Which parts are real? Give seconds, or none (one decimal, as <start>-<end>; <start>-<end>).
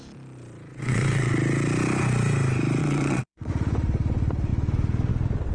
0.0-0.7; 1.3-2.8; 3.5-5.5